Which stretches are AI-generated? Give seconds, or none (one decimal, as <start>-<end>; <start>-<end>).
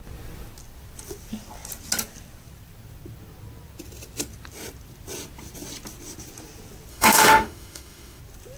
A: 6.9-8.2